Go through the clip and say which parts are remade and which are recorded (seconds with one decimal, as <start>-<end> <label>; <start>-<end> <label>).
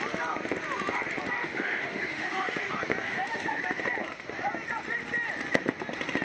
0.0-1.4 recorded; 1.4-2.7 remade; 2.7-3.1 recorded; 3.1-3.6 remade; 3.6-6.2 recorded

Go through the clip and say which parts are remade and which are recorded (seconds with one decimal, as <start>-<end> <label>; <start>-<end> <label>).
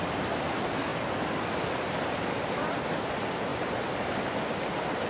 0.0-5.1 recorded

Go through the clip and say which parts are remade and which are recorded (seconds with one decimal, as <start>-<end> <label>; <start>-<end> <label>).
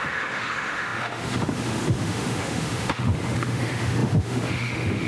0.0-5.1 remade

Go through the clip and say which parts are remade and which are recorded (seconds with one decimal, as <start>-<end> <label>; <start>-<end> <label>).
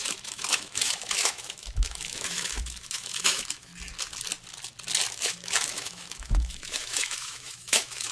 0.0-3.7 remade; 3.7-5.1 recorded; 5.1-8.1 remade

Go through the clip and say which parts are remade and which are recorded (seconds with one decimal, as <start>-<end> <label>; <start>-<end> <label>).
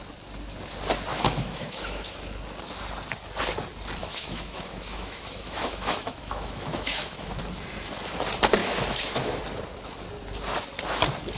0.0-1.1 recorded; 1.1-2.2 remade; 2.2-4.0 recorded; 4.0-7.4 remade; 7.4-8.6 recorded; 8.6-9.4 remade; 9.4-11.4 recorded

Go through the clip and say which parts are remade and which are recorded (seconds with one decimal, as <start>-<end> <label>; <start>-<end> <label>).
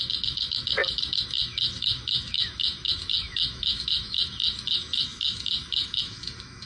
0.0-6.7 remade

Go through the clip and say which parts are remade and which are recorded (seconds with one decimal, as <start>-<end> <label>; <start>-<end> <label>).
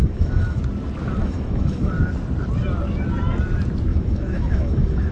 0.0-0.6 remade; 0.6-1.2 recorded; 1.2-1.9 remade; 1.9-3.9 recorded; 3.9-5.1 remade